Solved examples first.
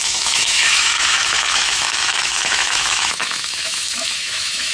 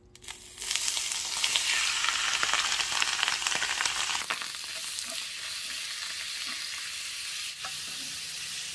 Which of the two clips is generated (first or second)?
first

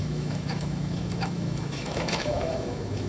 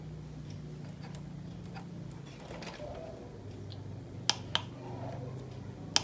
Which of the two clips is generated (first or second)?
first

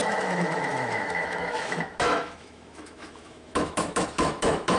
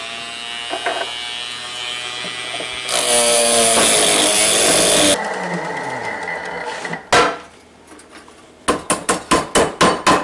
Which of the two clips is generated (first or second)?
first